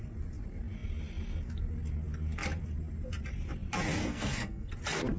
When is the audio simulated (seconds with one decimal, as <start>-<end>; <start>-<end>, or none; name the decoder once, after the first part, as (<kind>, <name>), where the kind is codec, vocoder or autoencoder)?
4.0-4.7 (codec, SNAC)